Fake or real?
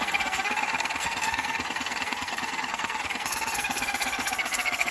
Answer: fake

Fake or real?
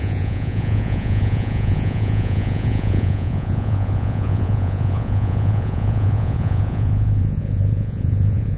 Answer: fake